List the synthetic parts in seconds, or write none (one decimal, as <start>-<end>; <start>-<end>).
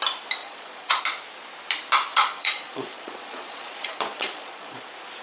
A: 0.4-1.0; 2.1-4.8